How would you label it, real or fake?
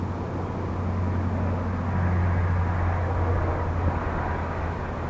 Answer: real